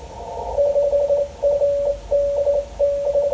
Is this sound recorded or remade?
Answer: recorded